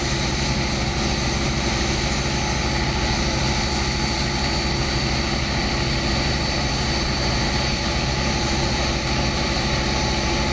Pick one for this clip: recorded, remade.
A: recorded